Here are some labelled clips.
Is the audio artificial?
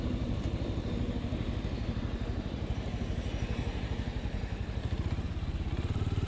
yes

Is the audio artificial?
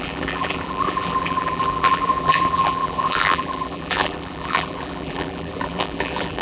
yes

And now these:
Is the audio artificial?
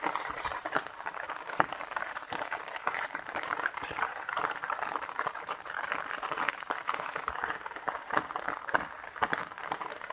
yes